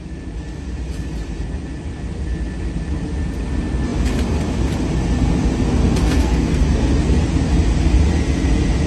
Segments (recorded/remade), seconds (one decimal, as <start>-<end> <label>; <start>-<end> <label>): 0.0-5.9 recorded; 5.9-7.2 remade; 7.2-8.9 recorded